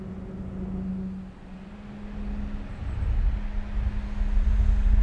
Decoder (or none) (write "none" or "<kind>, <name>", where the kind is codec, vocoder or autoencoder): none